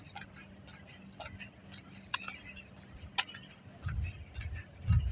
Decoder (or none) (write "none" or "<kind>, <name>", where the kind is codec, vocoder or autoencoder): none